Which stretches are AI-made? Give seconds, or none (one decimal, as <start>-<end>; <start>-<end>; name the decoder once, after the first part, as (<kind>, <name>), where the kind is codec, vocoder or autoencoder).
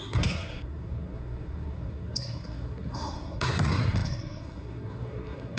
0.0-5.6 (codec, SNAC)